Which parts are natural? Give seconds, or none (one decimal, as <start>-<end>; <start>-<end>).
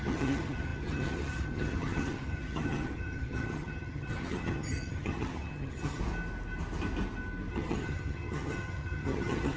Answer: 6.0-7.5